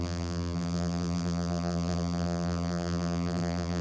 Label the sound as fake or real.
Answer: fake